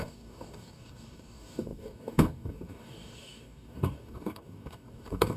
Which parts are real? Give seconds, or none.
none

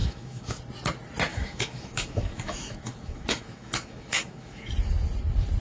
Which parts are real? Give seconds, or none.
0.6-1.3; 4.7-5.6

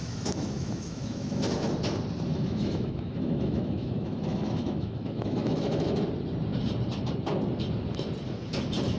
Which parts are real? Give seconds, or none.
1.4-2.3; 5.9-9.0

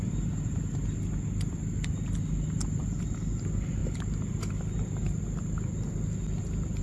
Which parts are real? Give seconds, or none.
0.0-6.8

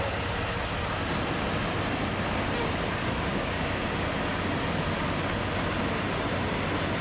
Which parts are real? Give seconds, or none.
0.0-3.3; 4.1-7.0